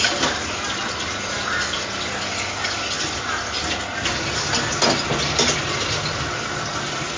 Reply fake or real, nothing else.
real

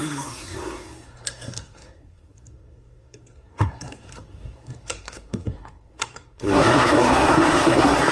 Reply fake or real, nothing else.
fake